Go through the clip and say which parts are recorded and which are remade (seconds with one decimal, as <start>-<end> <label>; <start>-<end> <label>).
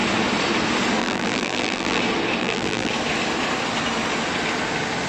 0.0-1.0 recorded; 1.0-2.0 remade; 2.0-2.4 recorded; 2.4-2.9 remade; 2.9-5.1 recorded